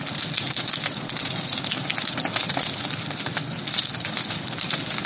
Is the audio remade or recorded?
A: recorded